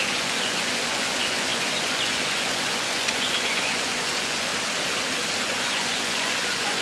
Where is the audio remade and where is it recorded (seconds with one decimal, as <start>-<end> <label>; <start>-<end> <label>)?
0.0-4.5 remade; 4.5-5.4 recorded; 5.4-6.8 remade

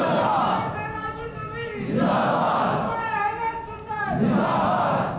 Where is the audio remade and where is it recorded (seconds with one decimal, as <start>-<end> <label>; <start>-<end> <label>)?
0.0-1.4 remade; 1.4-2.0 recorded; 2.0-5.2 remade

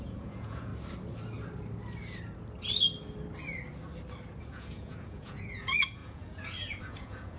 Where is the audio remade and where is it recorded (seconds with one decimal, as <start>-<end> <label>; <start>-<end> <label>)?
0.0-0.7 remade; 0.7-4.4 recorded; 4.4-7.4 remade

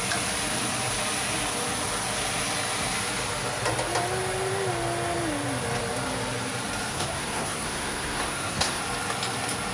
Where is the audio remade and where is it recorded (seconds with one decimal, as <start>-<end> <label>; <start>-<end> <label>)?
0.0-6.9 recorded; 6.9-8.8 remade; 8.8-9.7 recorded

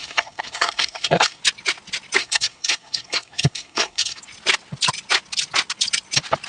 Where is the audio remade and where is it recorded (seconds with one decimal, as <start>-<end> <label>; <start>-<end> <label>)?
0.0-1.4 remade; 1.4-2.2 recorded; 2.2-4.2 remade; 4.2-6.5 recorded

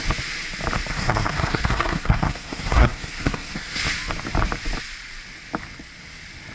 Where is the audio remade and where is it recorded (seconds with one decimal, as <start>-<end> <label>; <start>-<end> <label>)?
0.0-0.9 recorded; 0.9-3.8 remade; 3.8-6.5 recorded

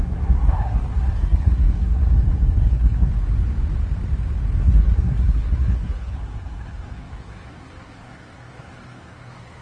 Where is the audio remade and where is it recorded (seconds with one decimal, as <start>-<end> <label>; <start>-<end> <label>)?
0.0-3.1 remade; 3.1-4.6 recorded; 4.6-9.6 remade

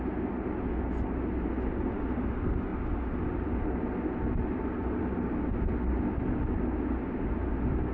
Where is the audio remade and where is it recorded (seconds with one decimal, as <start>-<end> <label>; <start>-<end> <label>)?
0.0-7.9 recorded